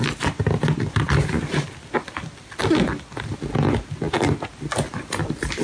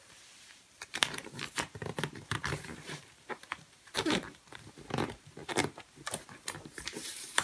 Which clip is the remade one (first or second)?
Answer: second